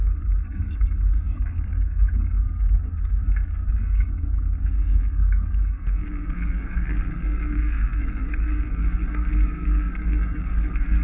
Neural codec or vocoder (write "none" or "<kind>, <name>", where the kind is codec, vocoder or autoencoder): codec, SNAC